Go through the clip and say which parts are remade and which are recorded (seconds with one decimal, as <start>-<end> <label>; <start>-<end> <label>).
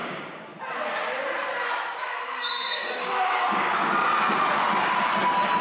0.0-0.6 remade; 0.6-2.0 recorded; 2.0-3.9 remade; 3.9-5.6 recorded